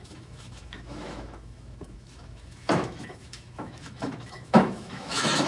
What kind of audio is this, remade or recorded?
remade